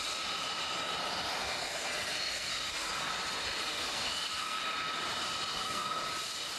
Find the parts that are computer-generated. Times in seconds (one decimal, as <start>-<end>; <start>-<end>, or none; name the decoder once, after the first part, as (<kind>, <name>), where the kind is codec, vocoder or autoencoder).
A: 1.4-3.1 (codec, SNAC); 3.7-4.6; 5.5-6.0